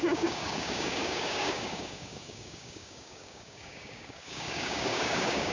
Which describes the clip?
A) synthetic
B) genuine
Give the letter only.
A